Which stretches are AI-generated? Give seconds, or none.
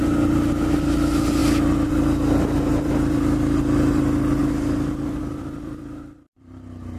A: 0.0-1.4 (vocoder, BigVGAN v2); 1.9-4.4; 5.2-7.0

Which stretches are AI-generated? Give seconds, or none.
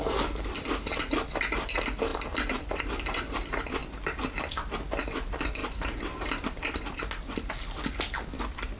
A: 5.6-7.0 (vocoder, BigVGAN v2)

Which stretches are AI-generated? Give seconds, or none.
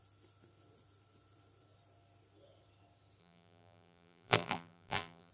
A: 3.2-5.3 (vocoder, BigVGAN v2)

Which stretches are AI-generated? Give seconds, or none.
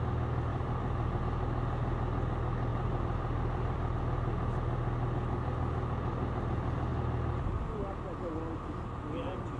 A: 0.5-1.2 (vocoder, BigVGAN v2); 2.7-4.0